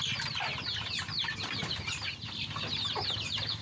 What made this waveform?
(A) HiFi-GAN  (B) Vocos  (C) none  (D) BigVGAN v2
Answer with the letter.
C